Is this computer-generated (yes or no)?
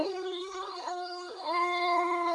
yes